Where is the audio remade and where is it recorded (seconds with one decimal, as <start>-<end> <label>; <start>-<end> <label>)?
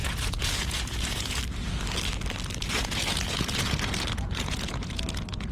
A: 0.0-1.4 remade; 1.4-2.6 recorded; 2.6-5.5 remade